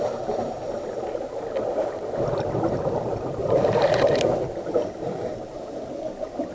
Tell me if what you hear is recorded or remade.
recorded